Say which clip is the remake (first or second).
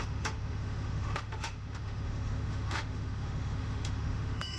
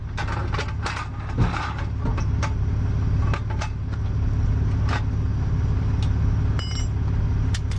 first